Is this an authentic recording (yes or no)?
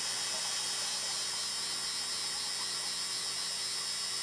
yes